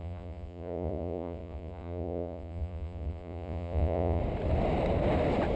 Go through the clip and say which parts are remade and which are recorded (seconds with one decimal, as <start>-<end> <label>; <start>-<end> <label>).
0.0-4.2 remade; 4.2-5.6 recorded